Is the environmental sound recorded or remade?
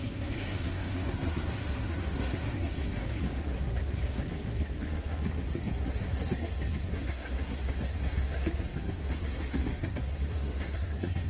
remade